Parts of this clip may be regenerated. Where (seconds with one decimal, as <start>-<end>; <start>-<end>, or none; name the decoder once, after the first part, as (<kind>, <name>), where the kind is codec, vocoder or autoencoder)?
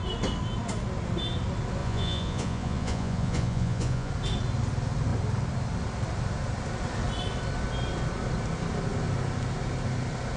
1.8-4.1 (vocoder, Vocos)